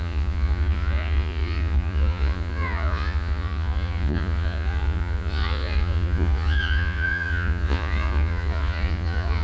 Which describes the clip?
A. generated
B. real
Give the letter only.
A